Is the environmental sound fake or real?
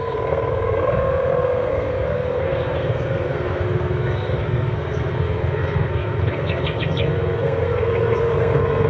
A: fake